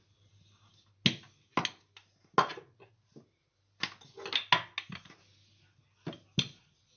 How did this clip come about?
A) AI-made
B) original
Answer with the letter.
B